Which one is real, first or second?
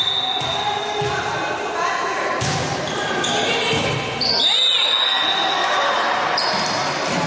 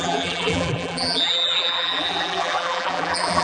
first